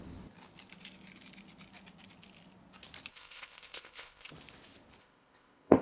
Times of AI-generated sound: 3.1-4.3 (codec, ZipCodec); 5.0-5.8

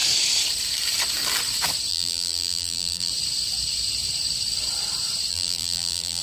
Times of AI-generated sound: 1.9-3.1 (vocoder, BigVGAN v2); 5.3-6.2

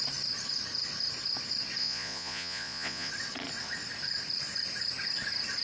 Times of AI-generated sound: 1.8-3.1 (vocoder, Vocos)

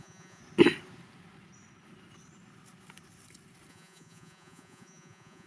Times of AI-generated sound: 0.0-0.4 (vocoder, Vocos); 3.7-5.5

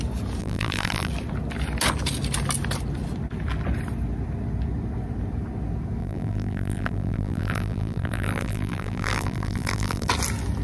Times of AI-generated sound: 0.4-1.1 (vocoder, BigVGAN v2); 6.0-10.1